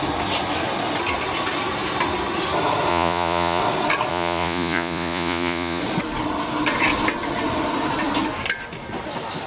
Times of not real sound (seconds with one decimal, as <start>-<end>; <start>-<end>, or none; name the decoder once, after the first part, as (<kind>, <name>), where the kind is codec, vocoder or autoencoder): 2.9-3.6 (vocoder, Vocos); 4.1-5.8